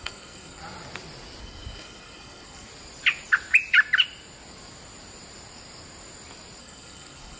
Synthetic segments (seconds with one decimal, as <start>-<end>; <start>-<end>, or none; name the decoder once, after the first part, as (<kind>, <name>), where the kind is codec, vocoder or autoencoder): 0.0-0.6 (codec, SNAC); 1.4-2.7; 6.6-7.4